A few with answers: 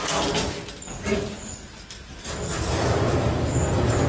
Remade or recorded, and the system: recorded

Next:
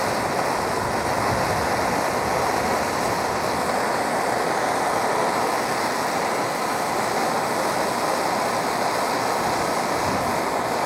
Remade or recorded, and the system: recorded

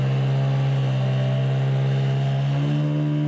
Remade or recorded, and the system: recorded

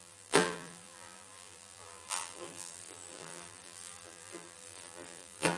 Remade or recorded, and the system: remade, vocoder, BigVGAN v2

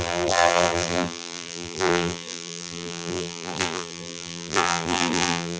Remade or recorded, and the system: remade, vocoder, BigVGAN v2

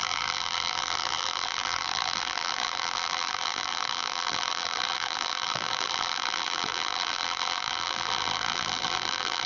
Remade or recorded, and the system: remade, vocoder, BigVGAN v2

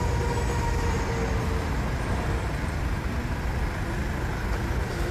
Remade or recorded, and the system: recorded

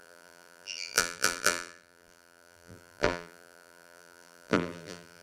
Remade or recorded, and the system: remade, vocoder, BigVGAN v2